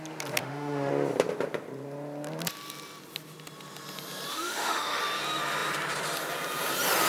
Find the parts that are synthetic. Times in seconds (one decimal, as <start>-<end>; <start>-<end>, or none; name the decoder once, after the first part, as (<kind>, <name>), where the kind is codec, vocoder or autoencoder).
0.4-0.9 (autoencoder, DAC-VAE); 4.3-5.0